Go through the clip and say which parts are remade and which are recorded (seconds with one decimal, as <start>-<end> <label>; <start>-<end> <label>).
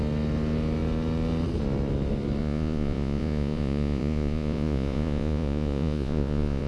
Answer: 0.0-2.4 recorded; 2.4-6.7 remade